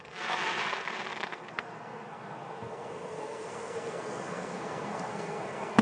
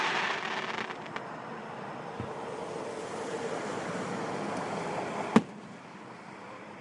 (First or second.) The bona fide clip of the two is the second